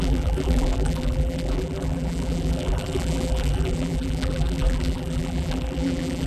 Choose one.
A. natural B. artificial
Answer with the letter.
B